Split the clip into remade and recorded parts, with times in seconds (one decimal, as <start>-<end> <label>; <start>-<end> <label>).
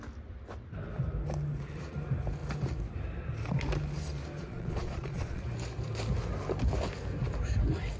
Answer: 0.0-4.5 recorded; 4.5-5.4 remade; 5.4-8.0 recorded